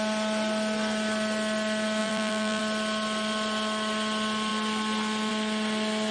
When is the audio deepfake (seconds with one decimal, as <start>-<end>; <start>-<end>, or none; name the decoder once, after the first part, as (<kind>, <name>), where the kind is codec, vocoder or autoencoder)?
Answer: 2.0-2.6 (vocoder, BigVGAN v2)